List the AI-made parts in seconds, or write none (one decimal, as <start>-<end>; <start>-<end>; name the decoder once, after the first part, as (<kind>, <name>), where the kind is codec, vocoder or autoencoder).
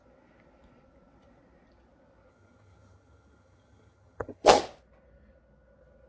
2.3-4.6 (vocoder, HiFi-GAN)